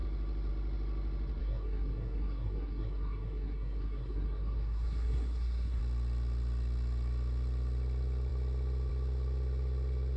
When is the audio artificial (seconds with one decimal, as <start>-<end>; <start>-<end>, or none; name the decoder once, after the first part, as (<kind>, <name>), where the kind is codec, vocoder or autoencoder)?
1.4-5.8 (codec, SNAC)